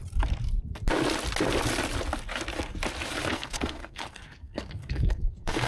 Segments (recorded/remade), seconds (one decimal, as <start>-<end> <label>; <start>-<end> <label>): 0.0-3.3 recorded; 3.3-5.7 remade